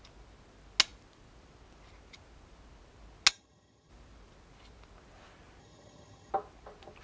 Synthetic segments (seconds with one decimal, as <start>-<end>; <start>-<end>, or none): 3.3-3.9; 5.6-6.3